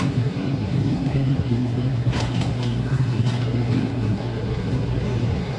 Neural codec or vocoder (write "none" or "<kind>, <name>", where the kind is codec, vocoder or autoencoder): codec, SNAC